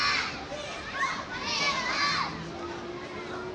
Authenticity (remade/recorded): recorded